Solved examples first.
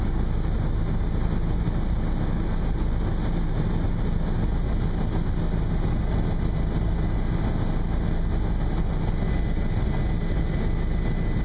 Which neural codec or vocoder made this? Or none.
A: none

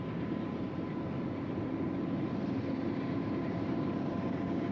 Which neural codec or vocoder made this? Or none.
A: vocoder, BigVGAN v2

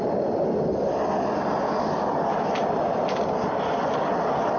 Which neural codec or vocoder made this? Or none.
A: none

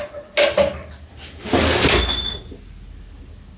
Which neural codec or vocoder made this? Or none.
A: none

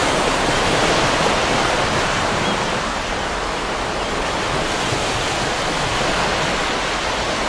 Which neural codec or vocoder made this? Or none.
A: none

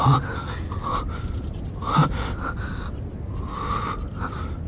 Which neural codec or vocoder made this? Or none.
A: none